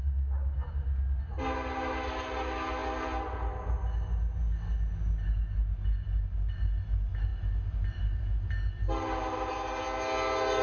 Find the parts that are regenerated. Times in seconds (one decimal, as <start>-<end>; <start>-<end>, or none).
none